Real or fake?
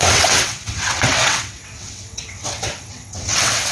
fake